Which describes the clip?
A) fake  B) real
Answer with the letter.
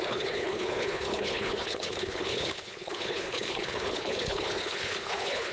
A